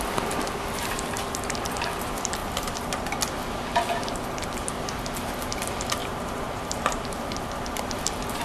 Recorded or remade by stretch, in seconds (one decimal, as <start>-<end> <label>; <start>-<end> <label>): 0.0-2.4 recorded; 2.4-3.1 remade; 3.1-6.0 recorded; 6.0-8.0 remade; 8.0-8.4 recorded